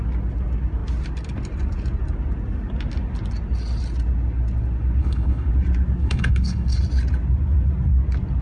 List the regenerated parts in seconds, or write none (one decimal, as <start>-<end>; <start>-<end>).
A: 5.0-5.5; 6.0-6.8